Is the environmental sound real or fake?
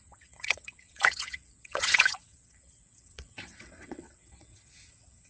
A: fake